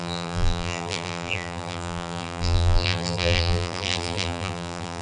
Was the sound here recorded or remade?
remade